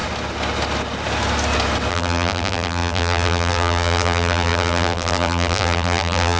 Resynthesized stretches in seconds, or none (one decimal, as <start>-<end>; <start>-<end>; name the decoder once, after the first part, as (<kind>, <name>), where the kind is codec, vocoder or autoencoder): 1.9-6.4 (vocoder, BigVGAN v2)